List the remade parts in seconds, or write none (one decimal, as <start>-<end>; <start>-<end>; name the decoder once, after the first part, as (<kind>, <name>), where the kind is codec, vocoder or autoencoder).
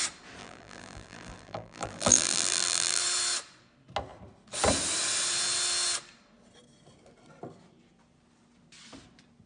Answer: 0.4-3.0 (vocoder, BigVGAN v2)